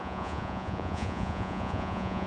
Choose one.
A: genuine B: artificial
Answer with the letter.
B